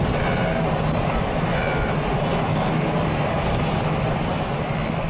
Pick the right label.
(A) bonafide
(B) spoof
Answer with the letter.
A